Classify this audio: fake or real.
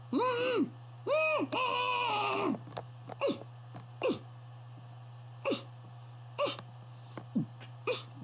real